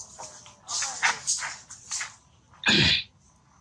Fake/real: real